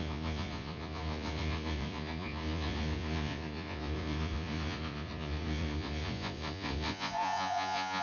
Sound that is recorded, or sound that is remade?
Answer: remade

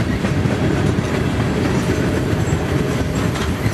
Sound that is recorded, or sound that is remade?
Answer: remade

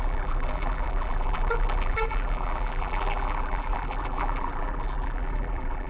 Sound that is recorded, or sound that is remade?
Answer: remade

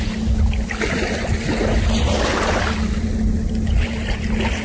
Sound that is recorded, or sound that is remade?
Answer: recorded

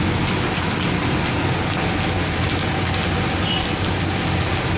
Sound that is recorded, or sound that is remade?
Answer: recorded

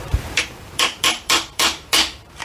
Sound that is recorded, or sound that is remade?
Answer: remade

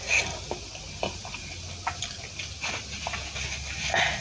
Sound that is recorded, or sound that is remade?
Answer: recorded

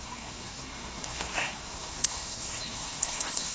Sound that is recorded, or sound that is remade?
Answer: remade